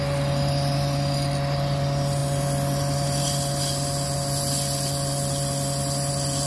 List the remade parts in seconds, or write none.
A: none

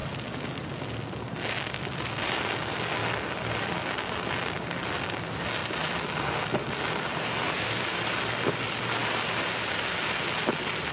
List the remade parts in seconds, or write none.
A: 5.6-6.8

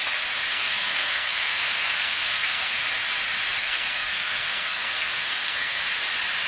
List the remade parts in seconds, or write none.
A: 0.5-2.8; 3.6-5.8

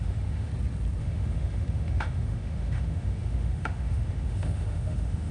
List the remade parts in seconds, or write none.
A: 0.0-0.5; 1.0-5.3